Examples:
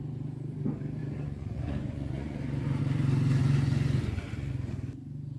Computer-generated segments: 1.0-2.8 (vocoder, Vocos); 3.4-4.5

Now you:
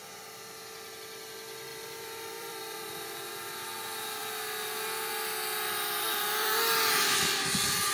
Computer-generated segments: 1.7-2.9 (vocoder, BigVGAN v2)

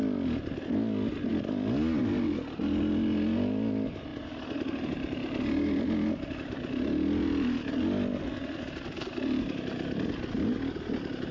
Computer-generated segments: none

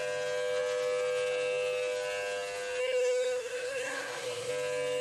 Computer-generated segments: 2.8-4.5 (codec, SNAC)

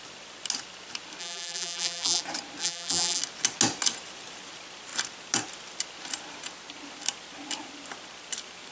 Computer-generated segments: 1.2-2.2 (vocoder, BigVGAN v2); 2.6-3.2

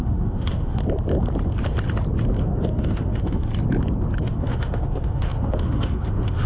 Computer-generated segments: 0.0-0.8 (autoencoder, DAC-VAE); 2.4-3.5; 4.2-6.5

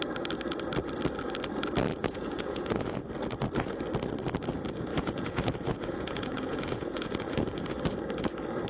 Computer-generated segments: 1.9-3.1 (vocoder, Vocos); 4.9-7.6